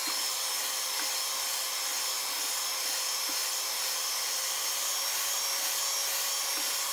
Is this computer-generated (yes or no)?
no